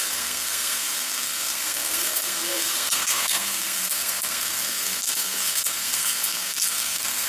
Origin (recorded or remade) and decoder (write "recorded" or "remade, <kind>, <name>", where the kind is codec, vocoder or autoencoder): remade, codec, SNAC